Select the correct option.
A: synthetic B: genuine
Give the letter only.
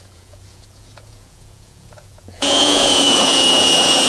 A